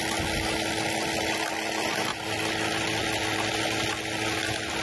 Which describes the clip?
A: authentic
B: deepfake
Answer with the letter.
A